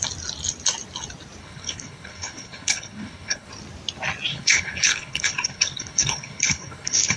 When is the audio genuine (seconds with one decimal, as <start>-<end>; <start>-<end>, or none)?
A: 0.0-1.4; 3.5-4.3